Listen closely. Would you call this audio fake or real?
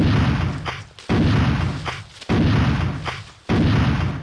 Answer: real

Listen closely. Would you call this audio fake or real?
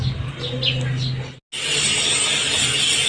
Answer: real